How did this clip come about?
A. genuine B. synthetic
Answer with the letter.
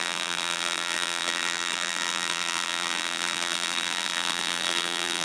B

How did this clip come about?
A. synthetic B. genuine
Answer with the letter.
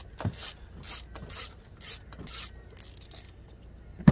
B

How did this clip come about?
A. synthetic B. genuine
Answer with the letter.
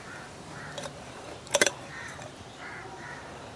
A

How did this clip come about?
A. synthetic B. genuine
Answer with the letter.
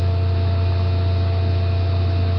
B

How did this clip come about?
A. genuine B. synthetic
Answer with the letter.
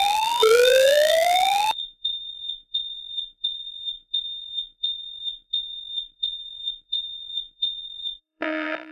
B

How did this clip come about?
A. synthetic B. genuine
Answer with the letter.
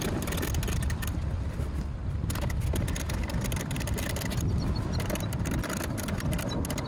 B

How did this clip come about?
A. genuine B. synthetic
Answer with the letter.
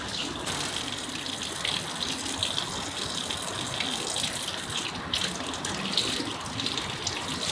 A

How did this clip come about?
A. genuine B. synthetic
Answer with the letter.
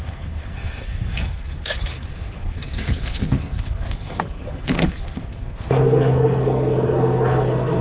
B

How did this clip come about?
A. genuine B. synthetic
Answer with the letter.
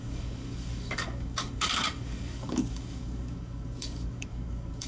B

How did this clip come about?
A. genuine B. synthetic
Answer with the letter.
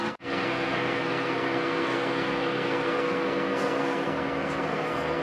B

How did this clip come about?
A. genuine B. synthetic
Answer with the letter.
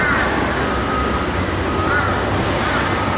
A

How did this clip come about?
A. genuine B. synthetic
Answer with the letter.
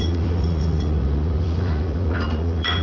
B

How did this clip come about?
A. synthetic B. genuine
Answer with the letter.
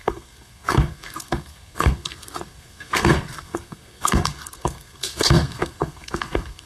A